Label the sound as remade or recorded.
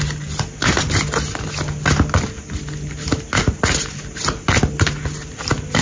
recorded